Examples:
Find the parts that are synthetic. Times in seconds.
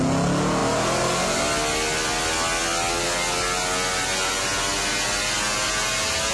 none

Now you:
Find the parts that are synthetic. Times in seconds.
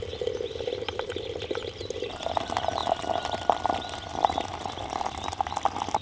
none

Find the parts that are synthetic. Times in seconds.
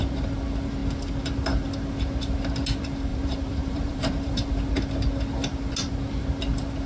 3.1-4.5